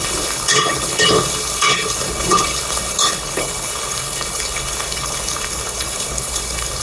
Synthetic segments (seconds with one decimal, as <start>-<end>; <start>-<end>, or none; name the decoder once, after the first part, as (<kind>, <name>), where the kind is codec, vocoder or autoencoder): 0.0-6.8 (codec, HILCodec)